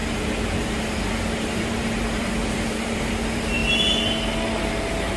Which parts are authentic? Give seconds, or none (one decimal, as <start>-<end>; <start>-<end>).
3.6-4.8